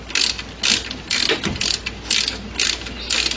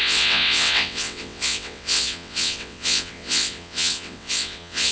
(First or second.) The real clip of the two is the first